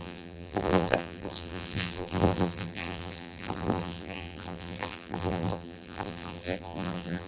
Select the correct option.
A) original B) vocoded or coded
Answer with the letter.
B